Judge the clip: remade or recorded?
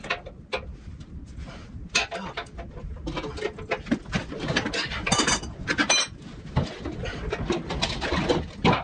recorded